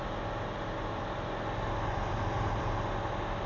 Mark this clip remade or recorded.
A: recorded